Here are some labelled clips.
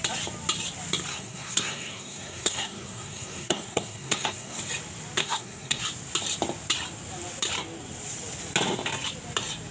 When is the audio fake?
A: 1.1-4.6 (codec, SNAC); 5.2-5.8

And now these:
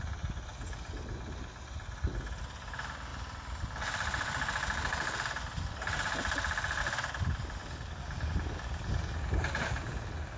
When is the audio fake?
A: none

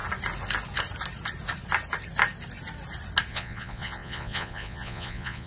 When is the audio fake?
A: 3.3-5.5 (vocoder, Vocos)